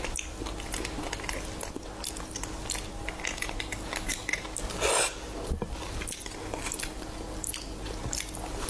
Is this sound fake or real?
real